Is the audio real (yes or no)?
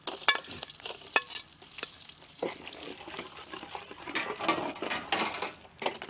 yes